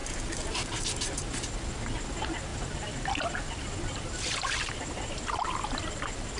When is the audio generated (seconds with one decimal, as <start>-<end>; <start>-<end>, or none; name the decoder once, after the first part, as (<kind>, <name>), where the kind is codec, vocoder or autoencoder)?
2.5-5.9 (vocoder, BigVGAN v2)